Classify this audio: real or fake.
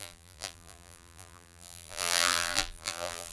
fake